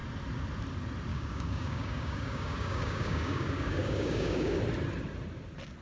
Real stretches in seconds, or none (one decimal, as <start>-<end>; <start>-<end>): 0.0-1.1; 4.6-5.8